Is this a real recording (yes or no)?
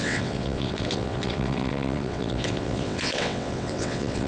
no